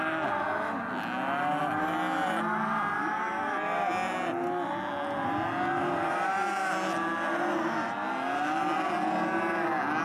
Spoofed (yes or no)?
no